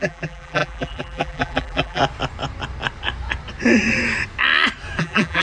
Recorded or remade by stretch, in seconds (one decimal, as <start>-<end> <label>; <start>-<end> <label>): 0.0-2.0 remade; 2.0-5.0 recorded; 5.0-5.4 remade